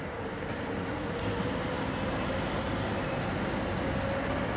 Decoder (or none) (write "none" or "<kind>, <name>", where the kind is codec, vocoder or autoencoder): none